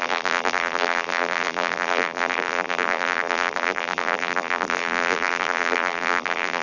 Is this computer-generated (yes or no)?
yes